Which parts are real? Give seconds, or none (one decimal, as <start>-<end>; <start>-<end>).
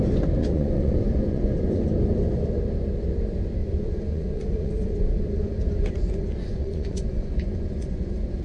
0.0-0.4; 1.9-3.6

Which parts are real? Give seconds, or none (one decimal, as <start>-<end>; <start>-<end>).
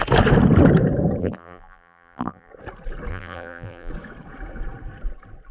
0.0-1.2; 2.5-3.1; 3.9-5.5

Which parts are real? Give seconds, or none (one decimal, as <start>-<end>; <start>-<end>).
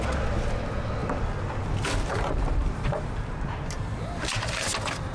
0.0-2.1; 4.6-5.1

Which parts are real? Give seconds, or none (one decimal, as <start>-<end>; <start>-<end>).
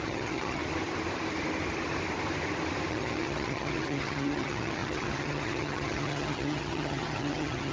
0.6-2.9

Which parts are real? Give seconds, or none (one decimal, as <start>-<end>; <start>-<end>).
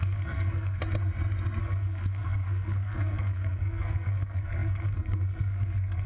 0.8-1.6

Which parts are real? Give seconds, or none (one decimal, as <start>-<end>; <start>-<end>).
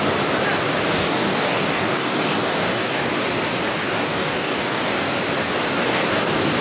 0.0-0.9; 3.1-3.8; 5.0-5.8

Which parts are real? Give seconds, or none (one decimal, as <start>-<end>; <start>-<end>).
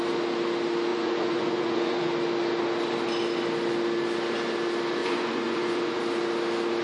0.0-0.9; 2.1-5.0; 6.0-6.8